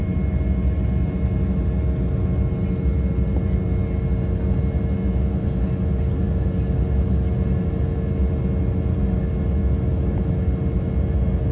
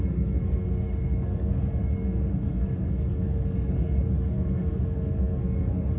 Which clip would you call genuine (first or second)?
first